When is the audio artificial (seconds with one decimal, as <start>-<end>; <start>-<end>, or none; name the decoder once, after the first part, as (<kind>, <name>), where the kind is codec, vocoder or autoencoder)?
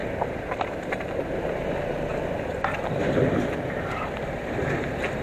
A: 0.0-1.2 (vocoder, BigVGAN v2); 2.1-4.6